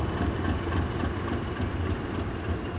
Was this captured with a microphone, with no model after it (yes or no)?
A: yes